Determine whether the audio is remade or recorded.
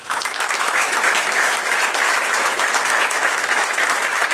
remade